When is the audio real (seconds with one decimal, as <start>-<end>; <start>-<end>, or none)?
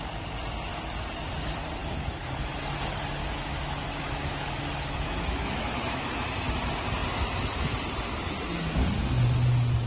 0.0-1.8; 2.6-3.2; 6.1-9.9